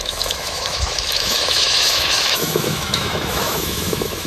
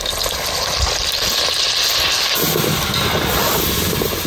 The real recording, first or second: second